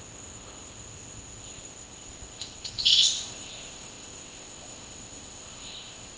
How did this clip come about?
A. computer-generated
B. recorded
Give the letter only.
A